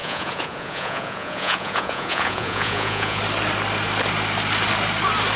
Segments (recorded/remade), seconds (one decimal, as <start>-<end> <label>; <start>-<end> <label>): 0.0-3.2 remade; 3.2-5.4 recorded